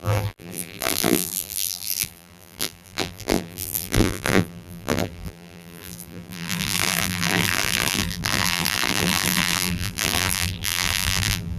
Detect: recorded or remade remade